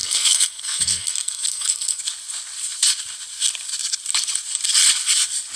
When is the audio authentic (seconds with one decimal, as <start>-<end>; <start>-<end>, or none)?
2.0-5.6